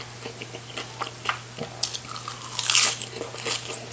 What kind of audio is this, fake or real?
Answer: real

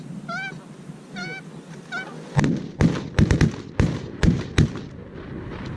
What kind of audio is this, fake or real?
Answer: real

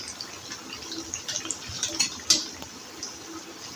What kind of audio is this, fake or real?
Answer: real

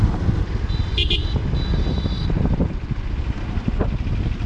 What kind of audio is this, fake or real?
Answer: real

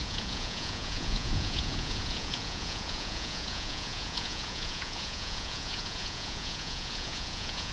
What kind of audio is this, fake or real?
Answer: fake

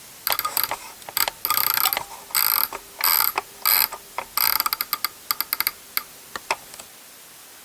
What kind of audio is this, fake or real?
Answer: real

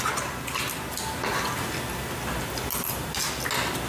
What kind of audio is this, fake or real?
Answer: real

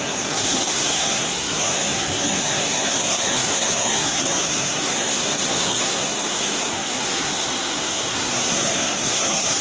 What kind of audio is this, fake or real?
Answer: fake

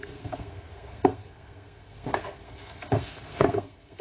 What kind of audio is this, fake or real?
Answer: fake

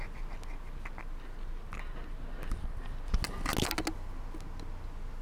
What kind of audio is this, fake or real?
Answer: real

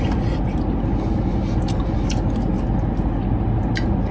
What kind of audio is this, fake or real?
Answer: real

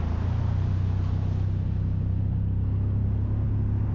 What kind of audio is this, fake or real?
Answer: real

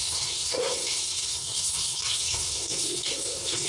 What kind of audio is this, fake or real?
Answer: fake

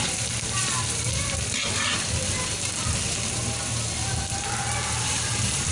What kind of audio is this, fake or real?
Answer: fake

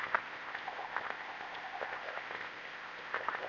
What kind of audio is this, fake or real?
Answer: fake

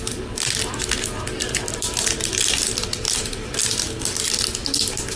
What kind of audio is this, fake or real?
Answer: real